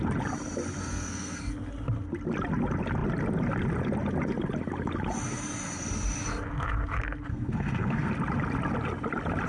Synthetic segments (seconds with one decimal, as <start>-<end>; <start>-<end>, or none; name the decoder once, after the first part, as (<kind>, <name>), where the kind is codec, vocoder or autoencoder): 0.8-1.4 (codec, SNAC); 7.3-8.1